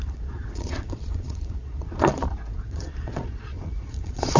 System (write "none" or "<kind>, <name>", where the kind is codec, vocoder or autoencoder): vocoder, Vocos